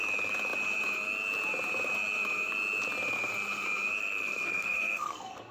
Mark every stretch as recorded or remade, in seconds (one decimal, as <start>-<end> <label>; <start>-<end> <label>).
0.0-4.0 recorded; 4.0-5.5 remade